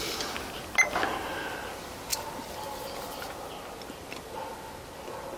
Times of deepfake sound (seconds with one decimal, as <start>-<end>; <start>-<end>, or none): none